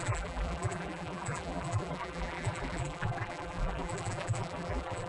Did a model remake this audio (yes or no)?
yes